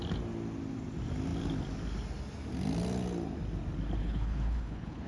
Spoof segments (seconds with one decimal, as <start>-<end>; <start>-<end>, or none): 4.0-5.1

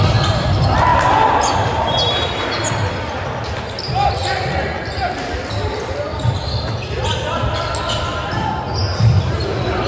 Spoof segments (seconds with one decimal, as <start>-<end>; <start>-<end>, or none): 0.9-2.9

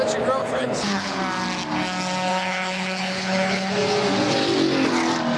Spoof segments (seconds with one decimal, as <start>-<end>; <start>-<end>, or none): 0.4-1.2; 2.3-3.8

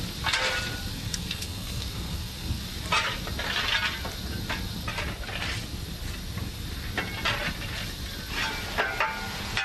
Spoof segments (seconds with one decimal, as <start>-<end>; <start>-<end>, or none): 0.9-2.6

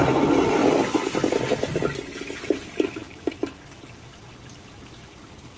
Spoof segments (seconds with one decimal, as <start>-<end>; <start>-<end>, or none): 0.0-0.6; 2.3-5.6

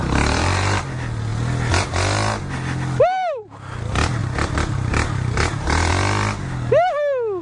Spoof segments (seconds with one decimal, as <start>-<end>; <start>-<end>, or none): 0.0-0.8; 4.2-5.9

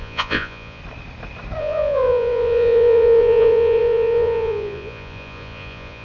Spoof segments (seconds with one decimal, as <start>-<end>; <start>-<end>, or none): 0.0-0.8; 1.6-6.0